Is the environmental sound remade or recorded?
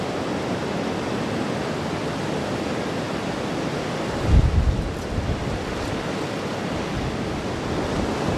recorded